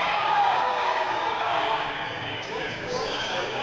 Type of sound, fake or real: fake